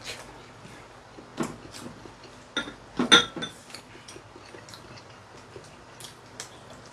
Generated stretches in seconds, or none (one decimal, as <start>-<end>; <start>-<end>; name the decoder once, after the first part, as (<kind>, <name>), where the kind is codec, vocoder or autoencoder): none